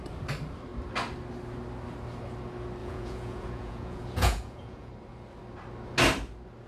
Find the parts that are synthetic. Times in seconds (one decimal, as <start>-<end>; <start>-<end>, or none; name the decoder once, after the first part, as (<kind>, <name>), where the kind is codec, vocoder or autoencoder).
2.8-4.9 (vocoder, Vocos)